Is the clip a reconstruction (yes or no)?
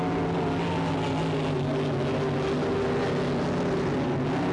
no